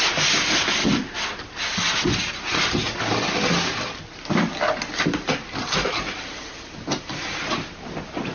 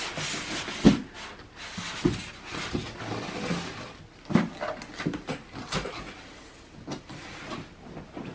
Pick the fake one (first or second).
first